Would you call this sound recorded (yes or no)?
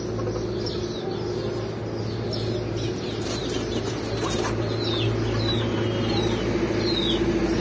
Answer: yes